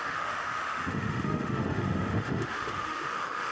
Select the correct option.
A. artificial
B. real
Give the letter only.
A